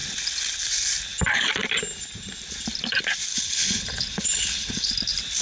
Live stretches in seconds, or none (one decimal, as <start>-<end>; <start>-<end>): 0.0-3.3; 4.9-5.4